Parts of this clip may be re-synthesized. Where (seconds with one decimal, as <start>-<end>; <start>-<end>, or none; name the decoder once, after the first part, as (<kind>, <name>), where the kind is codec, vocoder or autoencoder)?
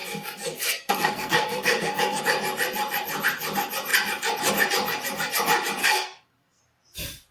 0.0-2.2 (codec, SNAC); 5.8-6.6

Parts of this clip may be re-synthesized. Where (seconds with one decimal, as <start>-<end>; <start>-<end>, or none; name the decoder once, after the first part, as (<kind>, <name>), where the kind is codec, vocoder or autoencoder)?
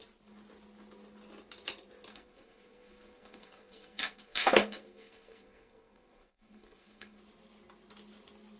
2.1-7.2 (codec, SNAC)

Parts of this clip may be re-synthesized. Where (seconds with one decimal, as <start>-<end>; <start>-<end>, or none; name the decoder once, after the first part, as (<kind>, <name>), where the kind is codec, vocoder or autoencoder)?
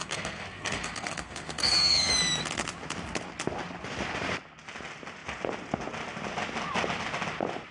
0.0-2.1 (codec, SNAC)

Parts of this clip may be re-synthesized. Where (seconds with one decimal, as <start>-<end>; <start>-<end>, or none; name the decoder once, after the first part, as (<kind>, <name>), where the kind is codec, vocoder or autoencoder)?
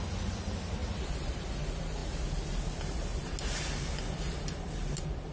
none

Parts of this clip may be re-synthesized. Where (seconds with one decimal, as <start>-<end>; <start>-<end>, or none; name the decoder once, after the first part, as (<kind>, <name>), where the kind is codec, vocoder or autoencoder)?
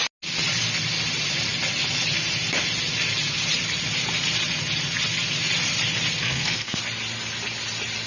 6.2-6.8 (codec, SNAC)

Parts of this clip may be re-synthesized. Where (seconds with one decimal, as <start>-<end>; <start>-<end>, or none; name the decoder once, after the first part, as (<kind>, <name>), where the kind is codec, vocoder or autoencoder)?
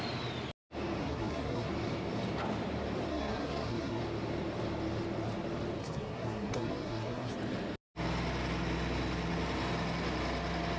1.0-1.7 (codec, SNAC); 3.1-4.0; 5.8-7.3